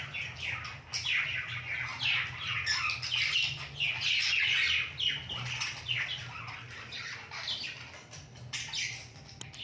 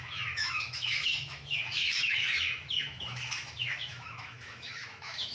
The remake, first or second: second